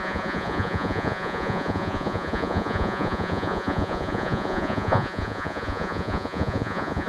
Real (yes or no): no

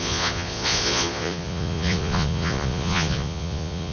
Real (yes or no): no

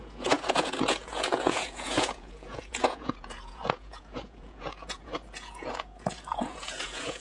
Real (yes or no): no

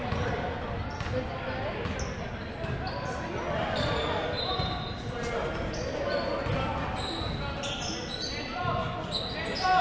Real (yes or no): yes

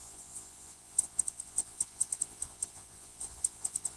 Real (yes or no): no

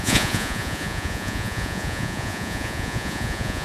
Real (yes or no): no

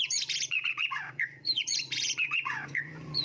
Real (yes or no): no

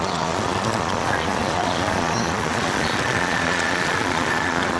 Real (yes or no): no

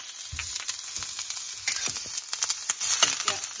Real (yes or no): yes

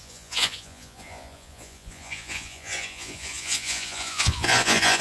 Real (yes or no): no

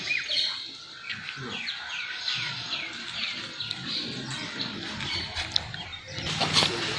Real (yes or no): yes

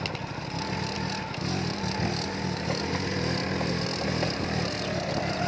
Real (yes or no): yes